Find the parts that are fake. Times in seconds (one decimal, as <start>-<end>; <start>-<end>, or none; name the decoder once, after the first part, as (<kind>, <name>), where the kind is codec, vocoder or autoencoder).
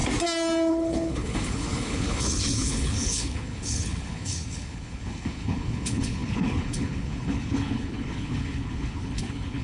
0.7-9.6 (codec, HILCodec)